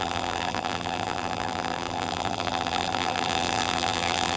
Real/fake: fake